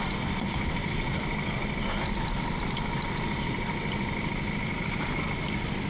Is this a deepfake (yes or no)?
no